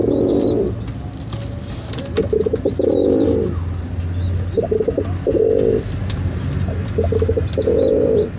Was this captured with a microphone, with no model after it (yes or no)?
yes